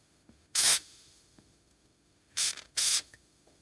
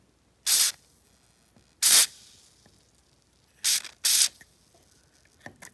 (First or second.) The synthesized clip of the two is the first